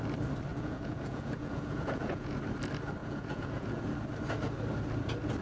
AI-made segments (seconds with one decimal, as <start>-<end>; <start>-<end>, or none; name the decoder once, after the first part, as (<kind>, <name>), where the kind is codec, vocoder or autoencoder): 0.5-2.4 (vocoder, Vocos); 3.0-3.8

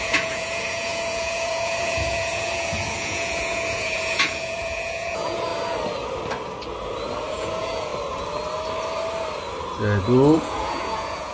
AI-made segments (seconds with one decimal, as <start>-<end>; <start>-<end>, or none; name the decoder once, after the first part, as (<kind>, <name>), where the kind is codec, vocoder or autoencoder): 0.0-5.5 (vocoder, Vocos); 7.3-7.9; 10.4-11.3

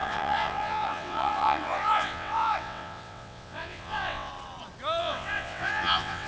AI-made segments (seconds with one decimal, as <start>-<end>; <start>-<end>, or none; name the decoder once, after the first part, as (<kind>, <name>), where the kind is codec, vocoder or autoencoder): 0.0-4.3 (vocoder, WaveNeXt); 5.0-6.3

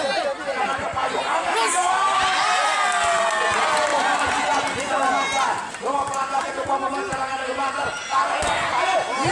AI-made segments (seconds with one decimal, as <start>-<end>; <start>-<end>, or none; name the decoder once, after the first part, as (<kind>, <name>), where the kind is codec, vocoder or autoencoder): none